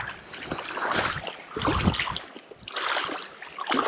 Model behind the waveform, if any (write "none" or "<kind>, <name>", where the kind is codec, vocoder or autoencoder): none